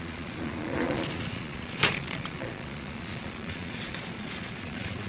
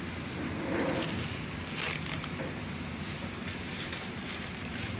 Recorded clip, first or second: second